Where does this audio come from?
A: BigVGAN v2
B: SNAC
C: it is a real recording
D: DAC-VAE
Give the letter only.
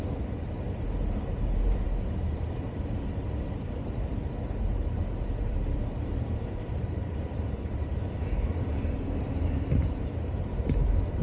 A